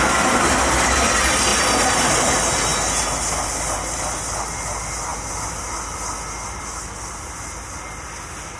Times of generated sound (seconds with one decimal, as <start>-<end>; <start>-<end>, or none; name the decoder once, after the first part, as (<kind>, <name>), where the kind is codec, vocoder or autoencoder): none